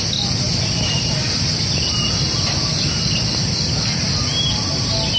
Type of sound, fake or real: real